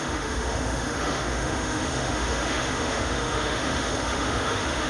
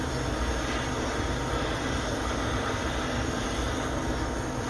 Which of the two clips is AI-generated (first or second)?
first